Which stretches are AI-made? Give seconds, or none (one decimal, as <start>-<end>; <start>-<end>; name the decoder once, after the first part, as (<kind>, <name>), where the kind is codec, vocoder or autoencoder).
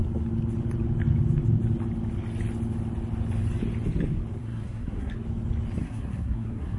4.4-5.1 (codec, SNAC); 5.8-6.8